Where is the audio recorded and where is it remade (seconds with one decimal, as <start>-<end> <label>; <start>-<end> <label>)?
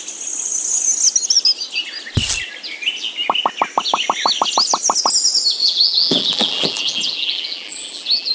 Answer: 0.0-5.6 recorded; 5.6-8.3 remade